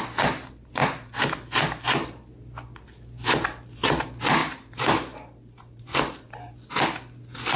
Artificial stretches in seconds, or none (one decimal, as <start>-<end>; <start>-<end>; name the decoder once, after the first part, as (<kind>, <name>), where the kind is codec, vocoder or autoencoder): 0.8-1.3 (vocoder, BigVGAN v2); 4.4-6.5